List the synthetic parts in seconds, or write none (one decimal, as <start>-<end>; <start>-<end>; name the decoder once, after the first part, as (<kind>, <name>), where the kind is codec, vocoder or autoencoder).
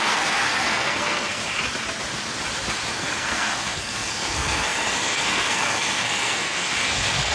0.0-1.4 (codec, SNAC); 2.9-7.3